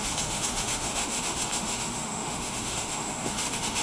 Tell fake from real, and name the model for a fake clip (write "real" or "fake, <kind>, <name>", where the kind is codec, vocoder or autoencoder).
fake, autoencoder, DAC-VAE